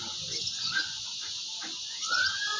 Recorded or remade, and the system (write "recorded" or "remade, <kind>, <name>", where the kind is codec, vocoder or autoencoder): remade, vocoder, Vocos